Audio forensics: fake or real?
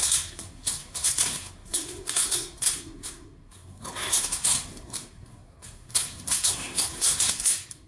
fake